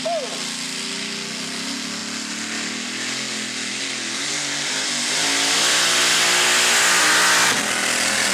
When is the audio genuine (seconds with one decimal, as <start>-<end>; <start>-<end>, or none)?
0.0-8.3